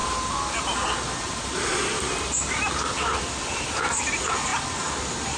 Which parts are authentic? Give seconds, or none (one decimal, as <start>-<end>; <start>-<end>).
0.0-5.4